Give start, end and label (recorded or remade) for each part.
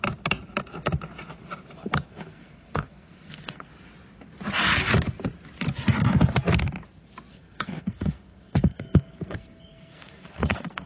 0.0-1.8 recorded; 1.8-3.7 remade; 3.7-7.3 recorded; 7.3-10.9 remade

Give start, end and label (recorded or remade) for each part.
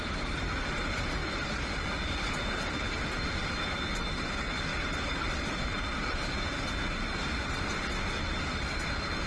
0.0-4.7 recorded; 4.7-6.5 remade; 6.5-9.3 recorded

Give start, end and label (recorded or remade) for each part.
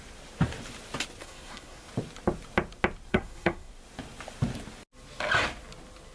0.0-1.2 recorded; 1.2-1.9 remade; 1.9-3.1 recorded; 3.1-3.7 remade; 3.7-6.1 recorded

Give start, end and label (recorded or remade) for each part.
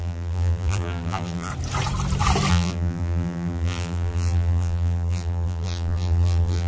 0.0-1.5 remade; 1.5-2.5 recorded; 2.5-6.7 remade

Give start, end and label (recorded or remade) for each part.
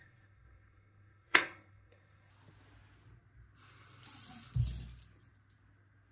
0.0-2.3 remade; 2.3-6.1 recorded